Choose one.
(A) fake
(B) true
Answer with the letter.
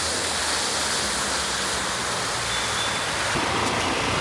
B